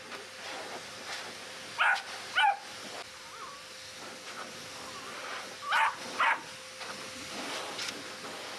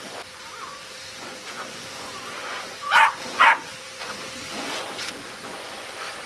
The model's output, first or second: second